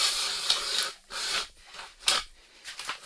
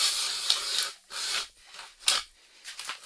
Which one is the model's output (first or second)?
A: first